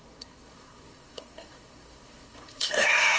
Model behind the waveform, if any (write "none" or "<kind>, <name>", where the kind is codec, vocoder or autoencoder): codec, SNAC